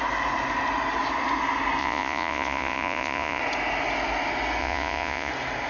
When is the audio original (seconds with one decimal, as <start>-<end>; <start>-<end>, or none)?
0.0-1.8; 3.4-4.6; 5.3-5.7